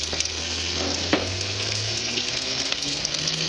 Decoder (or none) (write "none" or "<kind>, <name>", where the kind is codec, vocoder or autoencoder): codec, SNAC